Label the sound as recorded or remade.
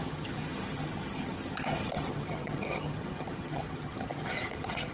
remade